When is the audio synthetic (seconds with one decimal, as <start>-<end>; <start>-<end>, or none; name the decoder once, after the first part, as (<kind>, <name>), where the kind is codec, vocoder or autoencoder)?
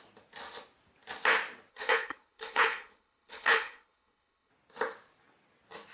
1.7-4.5 (codec, HILCodec)